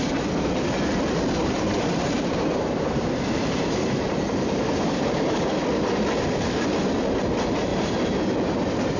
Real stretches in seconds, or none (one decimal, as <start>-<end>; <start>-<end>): 0.0-1.4; 5.6-7.7; 8.2-9.0